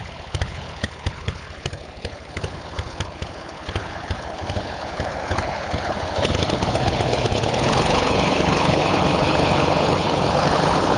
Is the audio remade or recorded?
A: remade